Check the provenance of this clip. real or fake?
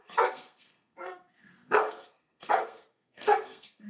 fake